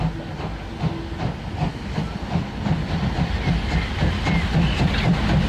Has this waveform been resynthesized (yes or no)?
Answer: no